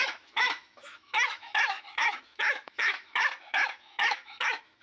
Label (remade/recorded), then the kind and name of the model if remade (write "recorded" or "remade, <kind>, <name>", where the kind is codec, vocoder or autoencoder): remade, autoencoder, DAC-VAE